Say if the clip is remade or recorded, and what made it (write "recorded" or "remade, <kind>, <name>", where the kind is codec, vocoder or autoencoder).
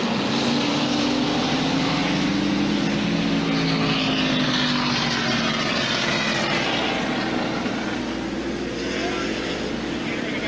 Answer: recorded